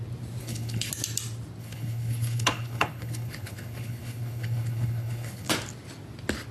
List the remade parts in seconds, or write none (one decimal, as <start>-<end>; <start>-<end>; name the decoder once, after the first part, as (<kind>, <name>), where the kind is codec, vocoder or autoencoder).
0.4-0.9 (codec, HILCodec); 1.6-5.5